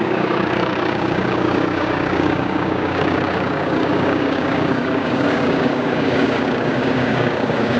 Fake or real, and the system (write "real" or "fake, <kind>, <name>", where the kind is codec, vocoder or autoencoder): fake, codec, DAC